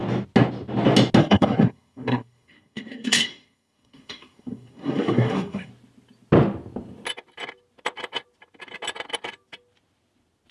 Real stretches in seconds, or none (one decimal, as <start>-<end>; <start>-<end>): 0.0-1.2; 5.7-10.5